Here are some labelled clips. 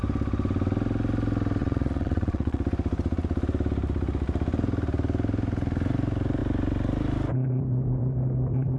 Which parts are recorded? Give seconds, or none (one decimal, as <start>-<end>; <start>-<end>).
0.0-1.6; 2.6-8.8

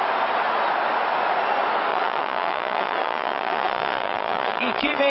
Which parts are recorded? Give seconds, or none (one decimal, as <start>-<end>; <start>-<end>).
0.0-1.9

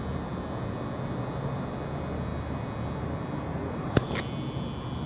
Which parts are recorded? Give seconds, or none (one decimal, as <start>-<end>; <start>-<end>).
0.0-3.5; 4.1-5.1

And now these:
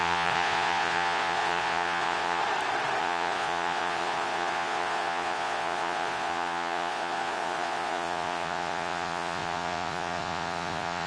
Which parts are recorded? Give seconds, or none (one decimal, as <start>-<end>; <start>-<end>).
2.4-3.0

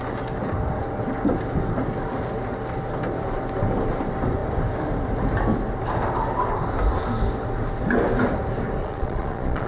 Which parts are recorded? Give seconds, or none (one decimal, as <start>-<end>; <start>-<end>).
0.0-8.8

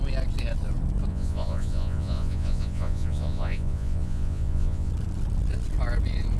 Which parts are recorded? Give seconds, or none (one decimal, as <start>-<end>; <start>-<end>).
0.0-1.1; 4.9-6.4

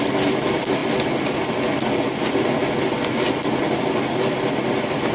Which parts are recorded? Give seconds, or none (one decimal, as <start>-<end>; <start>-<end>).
0.0-5.1